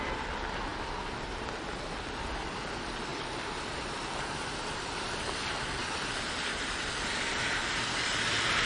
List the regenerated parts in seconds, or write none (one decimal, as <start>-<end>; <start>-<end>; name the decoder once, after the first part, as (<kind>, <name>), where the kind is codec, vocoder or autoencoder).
3.1-5.8 (vocoder, BigVGAN v2)